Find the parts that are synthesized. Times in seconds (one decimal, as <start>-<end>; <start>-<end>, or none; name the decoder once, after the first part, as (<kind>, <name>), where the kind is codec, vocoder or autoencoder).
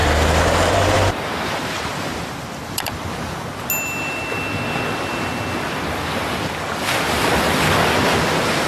0.0-3.5 (vocoder, BigVGAN v2)